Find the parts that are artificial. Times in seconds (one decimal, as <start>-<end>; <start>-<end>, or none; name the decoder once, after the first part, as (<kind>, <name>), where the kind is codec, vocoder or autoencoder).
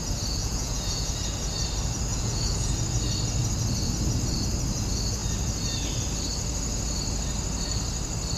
0.4-1.1 (vocoder, Vocos); 2.1-2.7